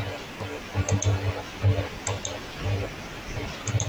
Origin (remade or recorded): recorded